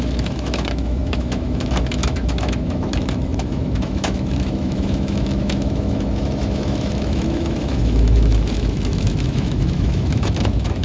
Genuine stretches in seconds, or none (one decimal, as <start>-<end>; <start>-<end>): none

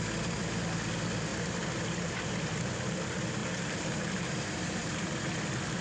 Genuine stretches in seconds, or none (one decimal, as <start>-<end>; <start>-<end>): 0.0-1.3; 2.3-3.4; 5.2-5.8

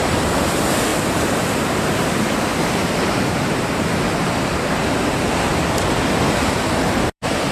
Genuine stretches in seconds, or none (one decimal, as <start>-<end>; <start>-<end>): 5.5-6.8

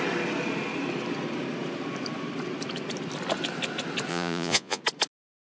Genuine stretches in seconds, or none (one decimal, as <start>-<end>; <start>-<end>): 0.0-4.1; 4.8-5.5

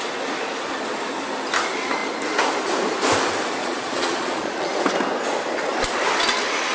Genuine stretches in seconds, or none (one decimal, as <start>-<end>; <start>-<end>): 0.0-3.6; 4.7-6.7

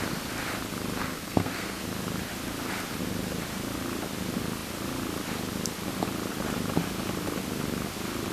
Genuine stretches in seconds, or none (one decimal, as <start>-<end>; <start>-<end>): 0.0-1.0; 1.8-8.3

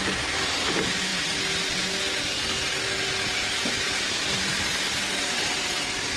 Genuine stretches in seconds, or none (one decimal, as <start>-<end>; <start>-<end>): 0.0-6.2